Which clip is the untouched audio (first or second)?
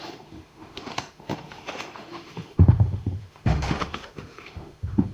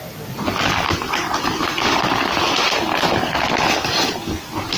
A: second